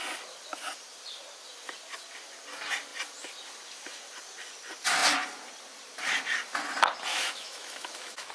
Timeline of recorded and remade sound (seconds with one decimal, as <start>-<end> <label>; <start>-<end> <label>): 0.0-7.1 recorded; 7.1-8.3 remade